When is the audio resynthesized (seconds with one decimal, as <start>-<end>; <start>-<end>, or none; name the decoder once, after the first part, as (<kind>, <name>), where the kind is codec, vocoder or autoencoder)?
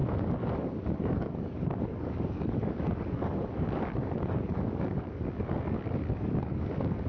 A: 0.0-7.1 (codec, DAC)